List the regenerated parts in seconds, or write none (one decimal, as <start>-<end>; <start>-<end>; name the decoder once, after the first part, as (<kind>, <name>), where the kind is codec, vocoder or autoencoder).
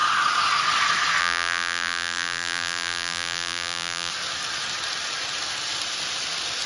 1.2-4.1 (vocoder, BigVGAN v2)